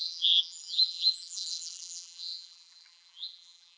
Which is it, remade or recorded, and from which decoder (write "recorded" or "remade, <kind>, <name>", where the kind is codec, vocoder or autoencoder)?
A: remade, vocoder, BigVGAN v2